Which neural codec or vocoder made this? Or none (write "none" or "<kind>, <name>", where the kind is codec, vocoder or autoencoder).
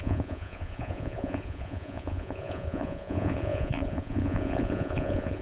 vocoder, Vocos